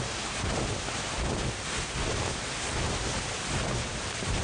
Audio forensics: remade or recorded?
recorded